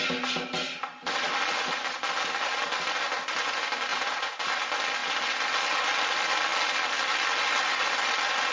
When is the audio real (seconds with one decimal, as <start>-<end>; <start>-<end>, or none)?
0.0-3.9; 4.4-8.5